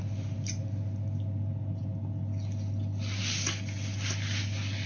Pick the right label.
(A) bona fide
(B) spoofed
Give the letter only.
A